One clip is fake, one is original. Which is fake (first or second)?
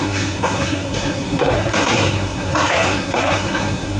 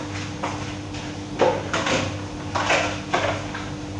first